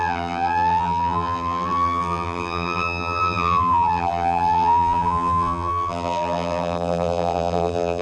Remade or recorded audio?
remade